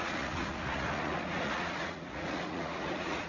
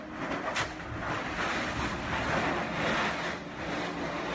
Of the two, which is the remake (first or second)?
first